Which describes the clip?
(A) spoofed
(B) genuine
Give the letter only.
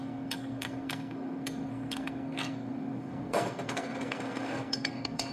A